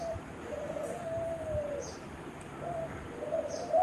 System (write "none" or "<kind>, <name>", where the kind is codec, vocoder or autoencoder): vocoder, BigVGAN v2